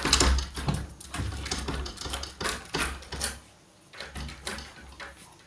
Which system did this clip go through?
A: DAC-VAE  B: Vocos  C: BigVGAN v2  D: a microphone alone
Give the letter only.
D